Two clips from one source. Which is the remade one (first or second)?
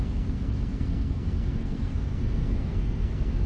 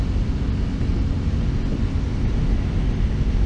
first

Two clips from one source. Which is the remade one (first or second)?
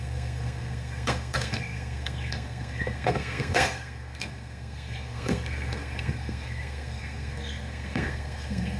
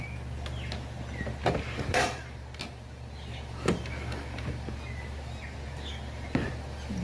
first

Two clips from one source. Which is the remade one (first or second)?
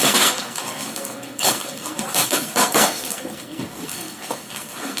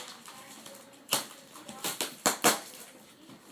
first